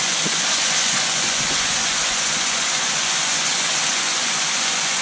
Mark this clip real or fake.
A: fake